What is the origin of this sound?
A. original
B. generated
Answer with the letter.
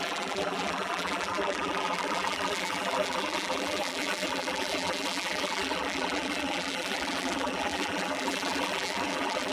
B